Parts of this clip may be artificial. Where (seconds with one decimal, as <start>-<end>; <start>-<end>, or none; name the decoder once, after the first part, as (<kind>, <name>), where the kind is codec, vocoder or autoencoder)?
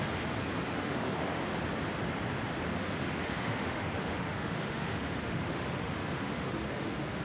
0.7-1.4 (autoencoder, DAC-VAE); 2.7-7.2